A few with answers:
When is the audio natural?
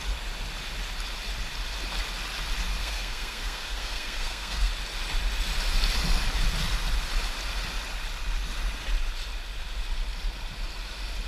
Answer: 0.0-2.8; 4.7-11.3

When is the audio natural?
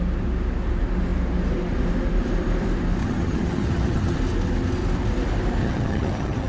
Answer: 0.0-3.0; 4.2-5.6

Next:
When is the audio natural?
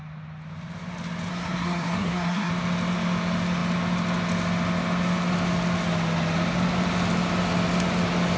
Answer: 0.0-1.3; 2.5-8.4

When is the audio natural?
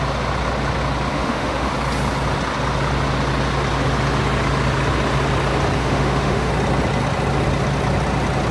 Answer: 0.0-1.1; 1.7-5.8; 6.5-8.5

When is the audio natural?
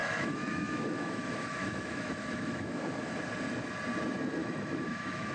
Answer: 3.2-4.4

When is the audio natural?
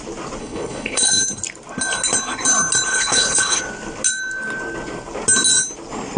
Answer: 0.0-0.4; 1.1-2.9; 3.6-6.2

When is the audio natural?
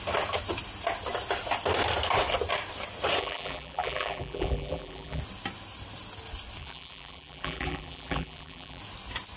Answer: 0.0-3.2; 5.2-6.6; 8.8-9.4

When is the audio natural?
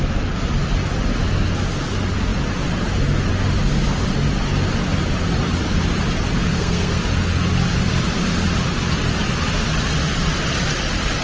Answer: 0.0-6.5; 7.0-11.2